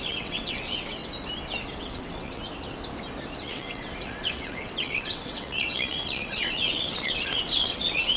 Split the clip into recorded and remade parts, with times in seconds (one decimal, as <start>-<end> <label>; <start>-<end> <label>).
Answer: 0.0-1.0 remade; 1.0-1.8 recorded; 1.8-2.4 remade; 2.4-3.4 recorded; 3.4-8.2 remade